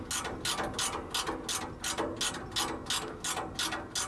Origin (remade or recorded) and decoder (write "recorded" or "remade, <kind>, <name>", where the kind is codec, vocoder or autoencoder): recorded